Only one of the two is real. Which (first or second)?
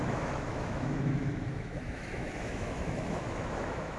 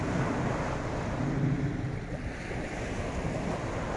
second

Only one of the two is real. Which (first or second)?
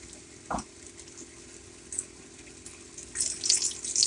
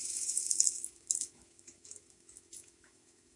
first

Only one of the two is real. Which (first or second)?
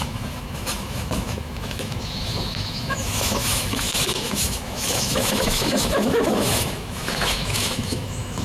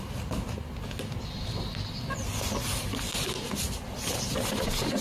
second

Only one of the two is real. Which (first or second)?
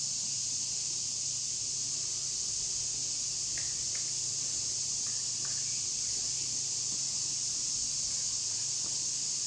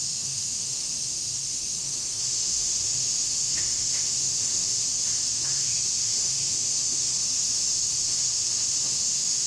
first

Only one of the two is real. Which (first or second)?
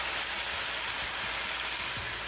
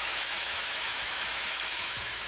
first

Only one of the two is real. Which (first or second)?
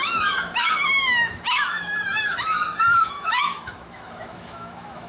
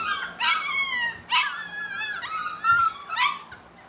second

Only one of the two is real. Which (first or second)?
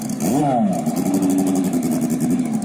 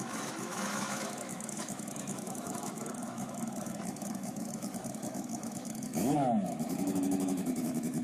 first